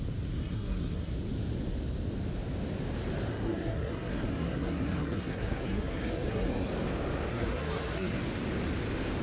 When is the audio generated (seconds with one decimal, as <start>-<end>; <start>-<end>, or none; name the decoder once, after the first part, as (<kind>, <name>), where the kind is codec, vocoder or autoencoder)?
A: 0.4-1.1 (codec, SNAC); 3.3-6.7; 7.3-8.2